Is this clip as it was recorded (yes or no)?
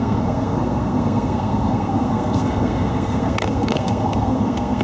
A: no